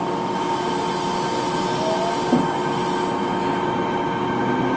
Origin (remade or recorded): recorded